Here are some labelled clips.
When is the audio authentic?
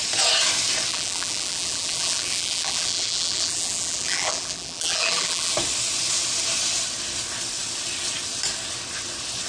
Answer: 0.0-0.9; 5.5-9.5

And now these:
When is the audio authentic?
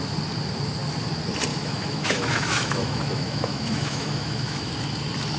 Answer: 0.0-1.5; 4.7-5.4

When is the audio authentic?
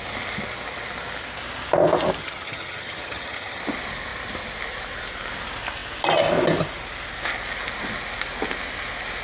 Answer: 0.0-2.2; 3.6-9.2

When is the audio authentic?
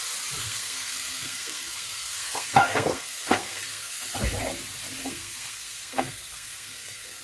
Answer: 0.0-0.4; 4.1-5.0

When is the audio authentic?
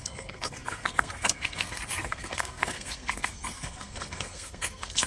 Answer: none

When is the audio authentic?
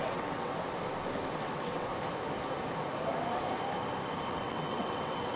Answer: 0.5-1.3; 1.9-4.3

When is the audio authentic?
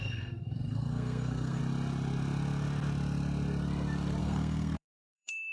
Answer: 1.6-4.2